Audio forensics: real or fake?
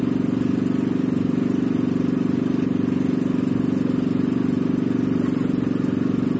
real